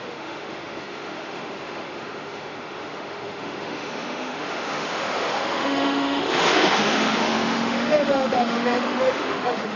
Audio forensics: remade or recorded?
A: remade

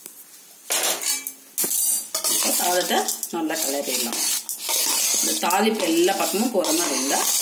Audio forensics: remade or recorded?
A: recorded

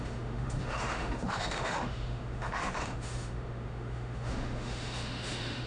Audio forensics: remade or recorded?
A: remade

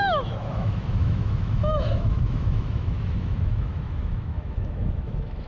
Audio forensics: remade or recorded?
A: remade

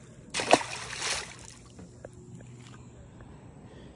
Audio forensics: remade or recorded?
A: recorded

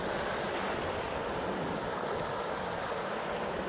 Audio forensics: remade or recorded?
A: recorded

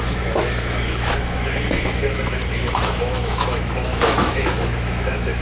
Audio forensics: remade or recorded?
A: remade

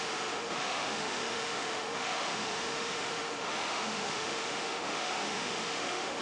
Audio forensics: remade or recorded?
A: remade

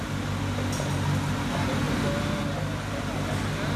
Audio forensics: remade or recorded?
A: recorded